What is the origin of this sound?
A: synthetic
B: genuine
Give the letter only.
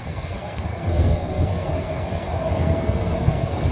A